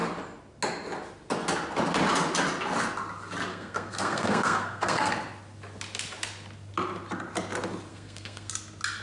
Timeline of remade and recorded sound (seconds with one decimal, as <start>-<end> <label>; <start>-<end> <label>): 0.0-3.5 recorded; 3.5-5.1 remade; 5.1-7.9 recorded; 7.9-8.5 remade; 8.5-9.0 recorded